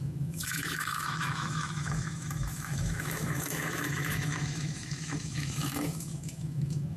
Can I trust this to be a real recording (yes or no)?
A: no